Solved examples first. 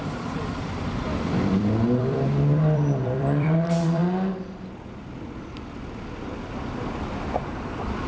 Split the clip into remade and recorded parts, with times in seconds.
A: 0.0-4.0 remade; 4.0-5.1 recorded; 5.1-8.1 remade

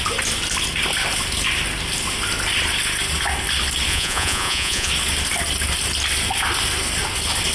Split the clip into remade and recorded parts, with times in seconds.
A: 0.0-3.9 recorded; 3.9-4.9 remade; 4.9-7.5 recorded